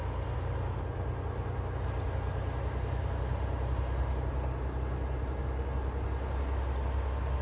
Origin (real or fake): real